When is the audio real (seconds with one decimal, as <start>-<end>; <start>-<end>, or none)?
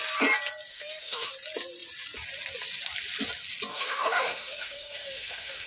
0.0-0.7; 1.3-3.7